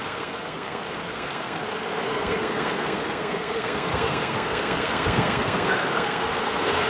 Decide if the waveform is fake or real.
fake